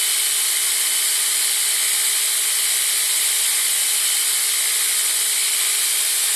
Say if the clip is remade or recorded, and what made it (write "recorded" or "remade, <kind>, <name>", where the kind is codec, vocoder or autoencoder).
recorded